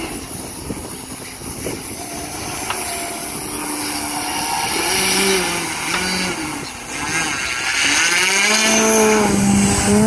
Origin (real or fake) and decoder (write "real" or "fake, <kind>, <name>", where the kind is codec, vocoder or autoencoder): real